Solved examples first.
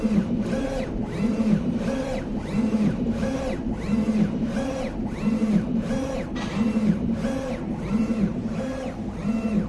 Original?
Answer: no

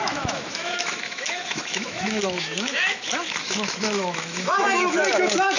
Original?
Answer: no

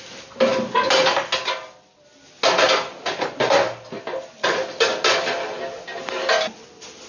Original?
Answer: yes